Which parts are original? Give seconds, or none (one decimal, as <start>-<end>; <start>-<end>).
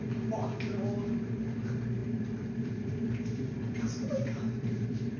0.0-2.0